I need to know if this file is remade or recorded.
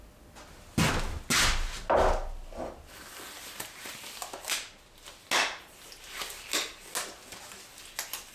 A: recorded